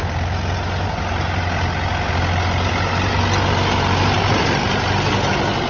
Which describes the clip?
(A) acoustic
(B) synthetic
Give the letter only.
A